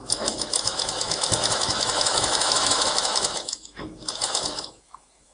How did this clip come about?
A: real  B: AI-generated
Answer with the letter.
B